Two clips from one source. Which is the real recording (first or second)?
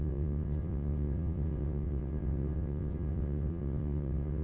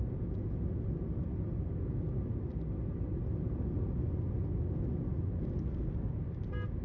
second